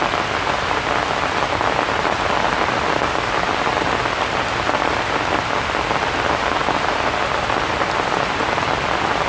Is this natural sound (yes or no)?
yes